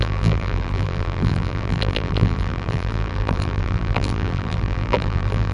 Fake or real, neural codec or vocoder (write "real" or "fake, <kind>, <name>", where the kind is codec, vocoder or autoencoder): fake, vocoder, BigVGAN v2